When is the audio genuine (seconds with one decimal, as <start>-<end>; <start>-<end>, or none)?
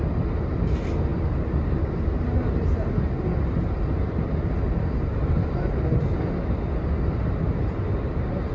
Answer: 0.0-8.5